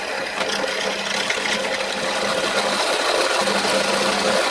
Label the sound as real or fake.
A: real